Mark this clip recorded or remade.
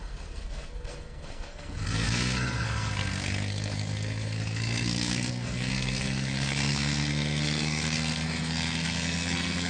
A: remade